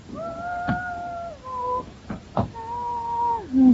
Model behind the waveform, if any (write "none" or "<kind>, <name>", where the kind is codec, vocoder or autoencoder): none